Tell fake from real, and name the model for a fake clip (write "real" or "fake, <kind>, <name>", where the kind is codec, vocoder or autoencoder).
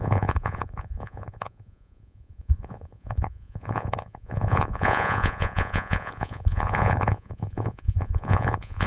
fake, vocoder, Vocos